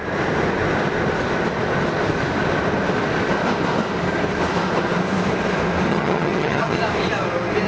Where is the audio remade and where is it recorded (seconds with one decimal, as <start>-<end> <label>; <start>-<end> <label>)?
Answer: 0.0-5.9 recorded; 5.9-6.8 remade; 6.8-7.7 recorded